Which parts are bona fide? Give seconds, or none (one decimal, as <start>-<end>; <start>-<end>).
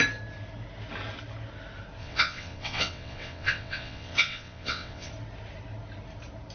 0.0-2.0; 5.1-6.5